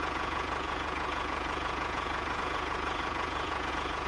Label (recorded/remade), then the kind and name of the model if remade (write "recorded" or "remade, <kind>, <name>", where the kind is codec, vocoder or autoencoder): remade, vocoder, Vocos